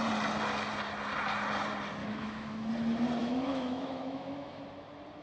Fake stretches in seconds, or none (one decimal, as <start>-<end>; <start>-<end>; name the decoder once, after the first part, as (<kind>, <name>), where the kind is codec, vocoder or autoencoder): 2.0-2.7 (autoencoder, DAC-VAE); 3.2-4.6